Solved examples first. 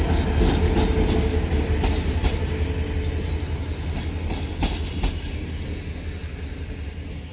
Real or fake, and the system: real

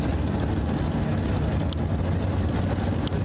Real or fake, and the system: real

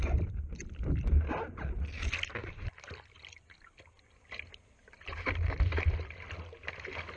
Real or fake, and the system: real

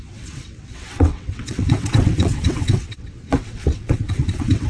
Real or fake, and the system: fake, vocoder, WaveNeXt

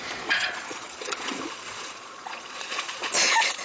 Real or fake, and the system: fake, vocoder, Vocos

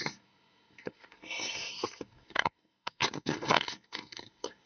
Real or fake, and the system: fake, codec, SNAC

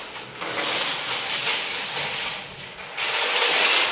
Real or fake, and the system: real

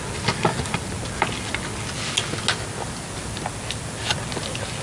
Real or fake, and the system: real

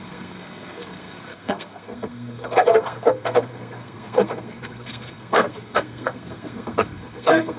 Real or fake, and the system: fake, codec, SNAC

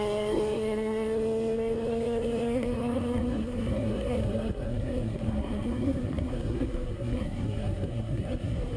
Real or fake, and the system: fake, codec, SNAC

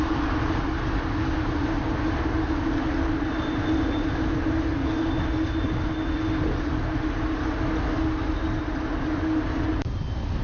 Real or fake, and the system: real